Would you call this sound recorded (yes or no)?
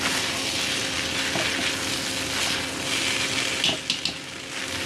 yes